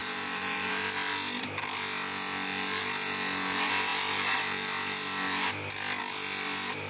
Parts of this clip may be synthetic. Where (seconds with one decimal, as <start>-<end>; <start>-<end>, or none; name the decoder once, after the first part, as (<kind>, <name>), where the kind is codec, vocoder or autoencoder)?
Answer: 0.0-0.7 (vocoder, BigVGAN v2)